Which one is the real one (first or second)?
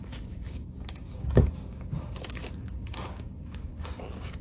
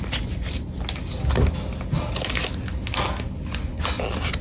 second